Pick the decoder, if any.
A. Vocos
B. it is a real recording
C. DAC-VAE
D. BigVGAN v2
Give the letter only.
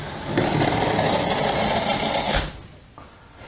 B